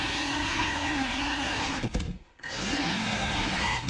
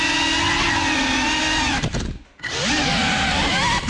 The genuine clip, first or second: second